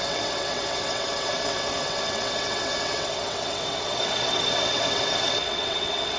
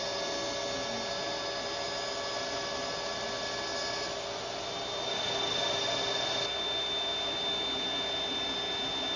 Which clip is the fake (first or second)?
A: first